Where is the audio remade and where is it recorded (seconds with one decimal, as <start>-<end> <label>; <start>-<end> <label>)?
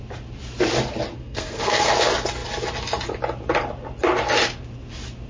0.0-1.2 recorded; 1.2-1.9 remade; 1.9-5.3 recorded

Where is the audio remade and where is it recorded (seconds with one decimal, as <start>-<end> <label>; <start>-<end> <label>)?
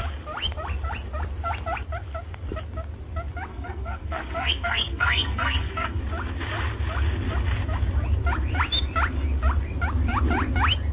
0.0-3.5 recorded; 3.5-6.0 remade; 6.0-10.9 recorded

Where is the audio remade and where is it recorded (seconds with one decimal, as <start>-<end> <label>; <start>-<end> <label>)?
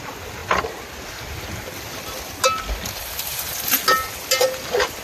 0.0-5.0 recorded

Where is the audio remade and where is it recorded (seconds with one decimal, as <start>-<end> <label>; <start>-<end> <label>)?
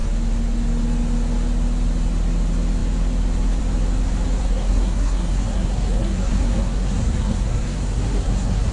0.0-4.4 recorded; 4.4-8.7 remade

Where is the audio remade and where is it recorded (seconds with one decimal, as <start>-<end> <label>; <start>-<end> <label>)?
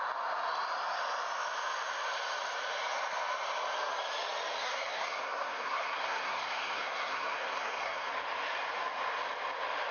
0.0-4.6 recorded; 4.6-8.1 remade; 8.1-9.9 recorded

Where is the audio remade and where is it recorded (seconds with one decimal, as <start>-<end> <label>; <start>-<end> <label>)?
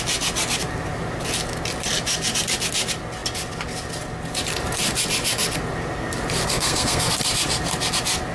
0.0-6.4 recorded; 6.4-7.1 remade; 7.1-8.3 recorded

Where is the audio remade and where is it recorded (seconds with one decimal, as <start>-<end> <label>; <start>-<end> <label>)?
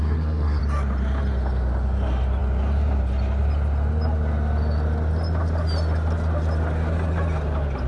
0.0-0.6 remade; 0.6-7.9 recorded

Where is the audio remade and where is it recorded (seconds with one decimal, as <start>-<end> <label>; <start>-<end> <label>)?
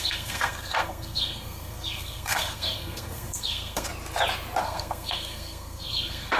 0.0-3.9 remade; 3.9-4.6 recorded; 4.6-6.4 remade